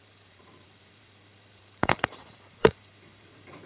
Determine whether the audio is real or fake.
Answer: fake